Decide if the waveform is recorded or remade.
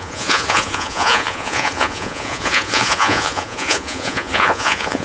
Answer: remade